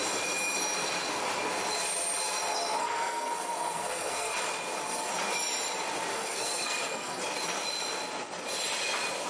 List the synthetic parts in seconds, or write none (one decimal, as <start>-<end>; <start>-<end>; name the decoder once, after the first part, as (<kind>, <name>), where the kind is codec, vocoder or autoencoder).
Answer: 2.8-4.4 (codec, SNAC); 6.1-7.2